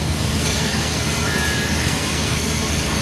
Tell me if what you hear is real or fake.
fake